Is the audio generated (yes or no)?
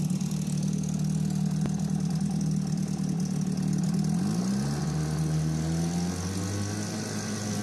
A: no